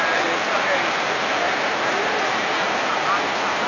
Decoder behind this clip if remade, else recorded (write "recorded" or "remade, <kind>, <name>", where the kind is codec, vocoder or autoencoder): recorded